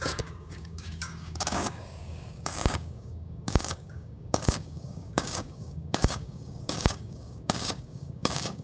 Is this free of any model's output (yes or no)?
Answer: no